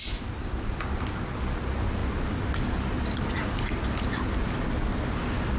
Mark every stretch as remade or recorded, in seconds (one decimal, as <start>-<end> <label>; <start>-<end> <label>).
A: 0.0-5.6 recorded